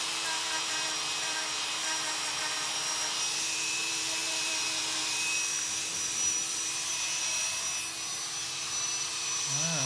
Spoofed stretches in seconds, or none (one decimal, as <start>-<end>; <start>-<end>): 0.0-6.9; 8.6-9.9